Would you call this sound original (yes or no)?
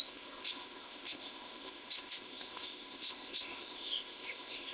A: no